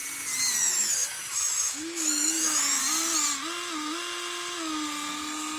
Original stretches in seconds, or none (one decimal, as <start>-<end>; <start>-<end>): 0.0-0.6; 2.8-5.6